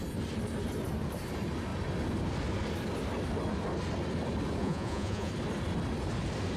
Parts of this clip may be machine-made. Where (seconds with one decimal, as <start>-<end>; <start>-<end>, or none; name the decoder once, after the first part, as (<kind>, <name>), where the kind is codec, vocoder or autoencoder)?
4.6-5.3 (vocoder, Vocos)